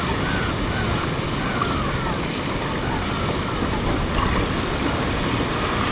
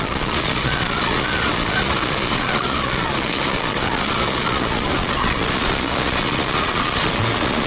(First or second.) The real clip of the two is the first